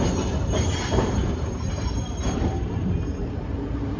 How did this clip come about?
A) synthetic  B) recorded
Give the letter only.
A